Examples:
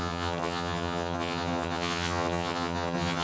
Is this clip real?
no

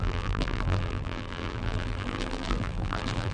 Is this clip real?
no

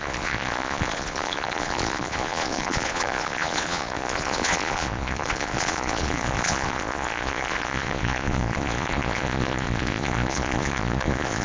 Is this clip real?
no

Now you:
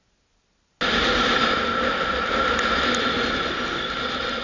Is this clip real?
yes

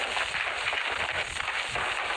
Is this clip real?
yes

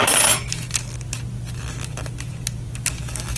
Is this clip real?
yes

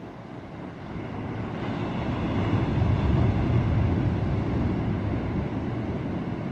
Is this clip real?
yes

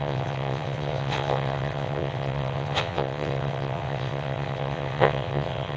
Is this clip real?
no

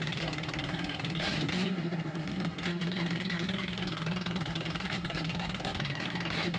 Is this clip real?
no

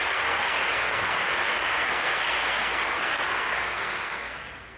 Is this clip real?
no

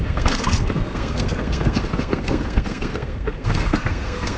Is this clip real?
no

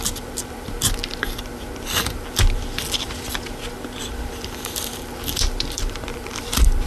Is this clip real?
no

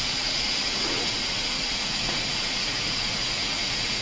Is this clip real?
no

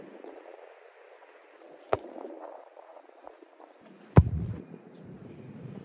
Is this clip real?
no